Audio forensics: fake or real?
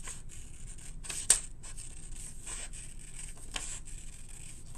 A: real